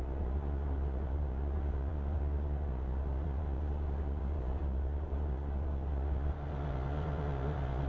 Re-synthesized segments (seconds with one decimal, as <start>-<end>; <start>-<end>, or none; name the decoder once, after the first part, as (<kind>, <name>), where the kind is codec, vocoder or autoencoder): 0.0-7.9 (vocoder, Vocos)